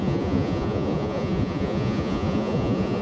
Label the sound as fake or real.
fake